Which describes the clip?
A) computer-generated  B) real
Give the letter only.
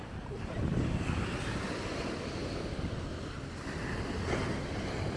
B